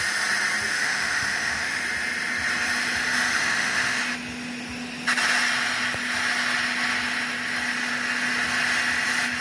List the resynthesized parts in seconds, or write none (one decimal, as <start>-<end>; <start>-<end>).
0.7-1.8; 3.3-4.0

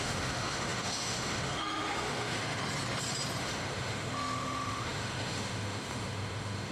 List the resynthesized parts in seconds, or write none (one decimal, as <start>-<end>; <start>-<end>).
0.0-2.6; 3.4-6.7